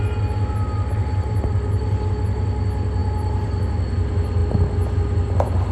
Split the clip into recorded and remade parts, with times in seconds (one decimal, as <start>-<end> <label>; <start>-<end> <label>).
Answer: 0.0-1.0 recorded; 1.0-2.1 remade; 2.1-3.0 recorded; 3.0-3.7 remade; 3.7-5.7 recorded